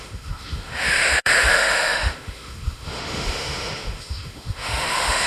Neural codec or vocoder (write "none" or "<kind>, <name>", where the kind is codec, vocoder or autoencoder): autoencoder, DAC-VAE